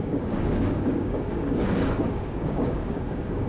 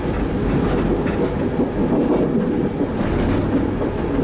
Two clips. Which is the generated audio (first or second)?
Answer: first